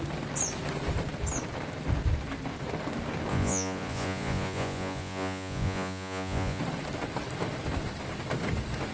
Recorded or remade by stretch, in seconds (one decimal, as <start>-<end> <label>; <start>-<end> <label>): 0.0-3.3 recorded; 3.3-6.6 remade; 6.6-8.9 recorded